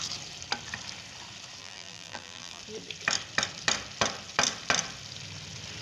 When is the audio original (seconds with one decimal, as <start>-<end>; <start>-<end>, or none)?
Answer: 0.0-1.6; 2.6-5.8